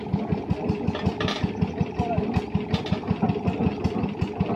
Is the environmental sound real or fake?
real